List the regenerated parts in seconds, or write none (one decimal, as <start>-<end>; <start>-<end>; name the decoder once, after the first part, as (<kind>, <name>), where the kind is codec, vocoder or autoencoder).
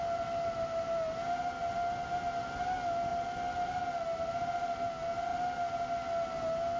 none